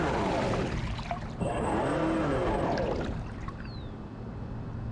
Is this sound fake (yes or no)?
no